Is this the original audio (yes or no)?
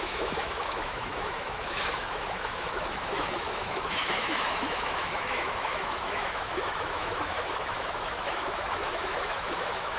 no